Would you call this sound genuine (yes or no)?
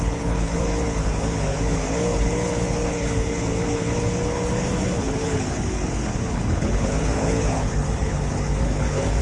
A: no